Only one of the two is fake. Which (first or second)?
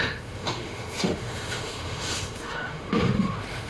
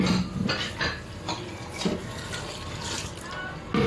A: first